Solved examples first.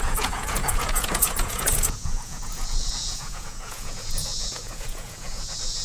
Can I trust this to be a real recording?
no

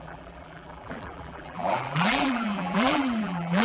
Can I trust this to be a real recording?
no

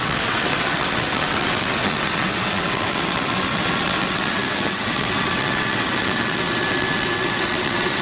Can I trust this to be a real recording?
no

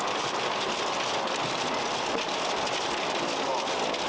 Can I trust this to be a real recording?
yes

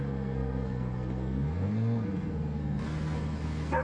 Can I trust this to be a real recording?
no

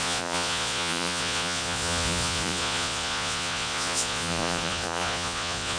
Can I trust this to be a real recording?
no